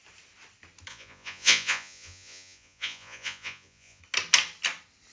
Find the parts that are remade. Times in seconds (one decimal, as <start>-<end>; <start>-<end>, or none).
0.9-4.0